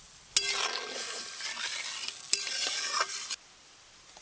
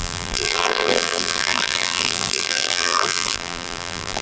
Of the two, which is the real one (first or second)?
first